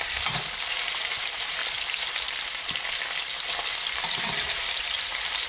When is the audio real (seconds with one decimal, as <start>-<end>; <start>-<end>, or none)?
1.6-4.2